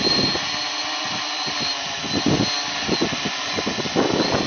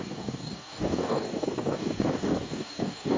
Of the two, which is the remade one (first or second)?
second